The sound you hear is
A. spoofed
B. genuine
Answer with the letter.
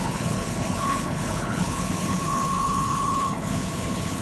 A